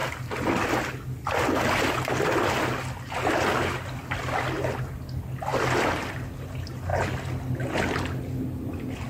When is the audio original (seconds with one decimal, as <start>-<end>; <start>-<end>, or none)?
0.0-9.1